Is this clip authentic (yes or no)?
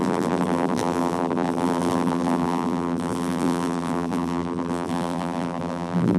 no